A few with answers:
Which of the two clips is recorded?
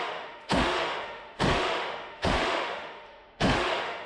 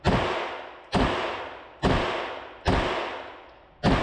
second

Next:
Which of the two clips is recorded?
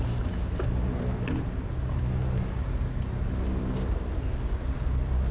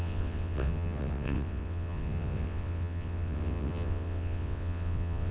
first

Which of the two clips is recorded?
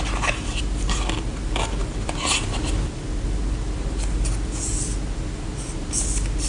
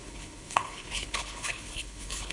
first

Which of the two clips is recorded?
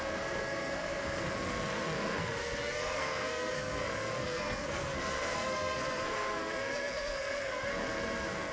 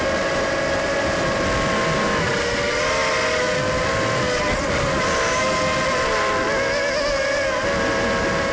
second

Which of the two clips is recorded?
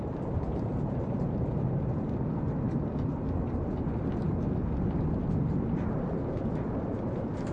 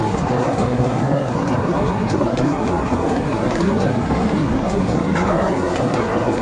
first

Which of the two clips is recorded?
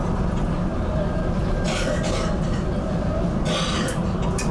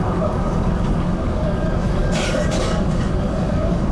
first